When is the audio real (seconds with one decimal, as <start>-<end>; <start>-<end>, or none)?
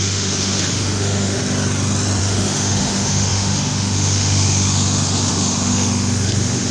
1.4-2.2